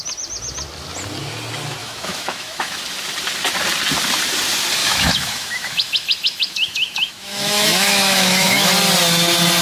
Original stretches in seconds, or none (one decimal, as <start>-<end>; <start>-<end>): 0.0-1.8; 2.8-4.8; 8.7-9.6